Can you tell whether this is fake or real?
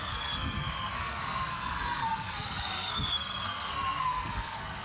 fake